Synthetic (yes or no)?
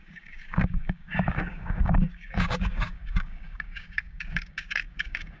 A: yes